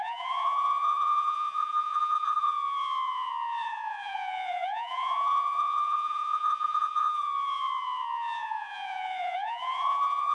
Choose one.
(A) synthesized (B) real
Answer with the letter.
A